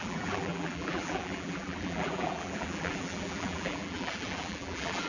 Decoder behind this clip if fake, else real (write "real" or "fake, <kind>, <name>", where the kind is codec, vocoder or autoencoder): fake, vocoder, BigVGAN v2